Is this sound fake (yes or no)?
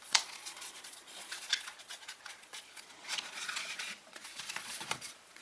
yes